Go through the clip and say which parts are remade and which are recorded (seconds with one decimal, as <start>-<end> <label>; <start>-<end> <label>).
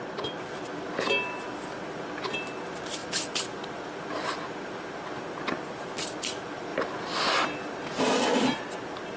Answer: 0.0-9.2 recorded